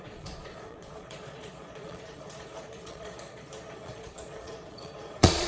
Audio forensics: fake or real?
fake